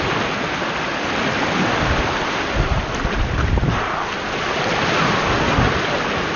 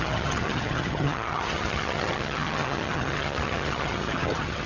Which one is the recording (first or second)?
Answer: first